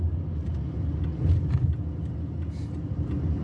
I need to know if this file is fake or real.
real